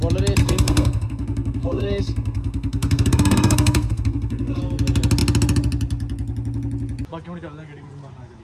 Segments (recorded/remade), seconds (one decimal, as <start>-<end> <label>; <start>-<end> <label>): 0.0-0.4 recorded; 0.4-4.6 remade; 4.6-8.4 recorded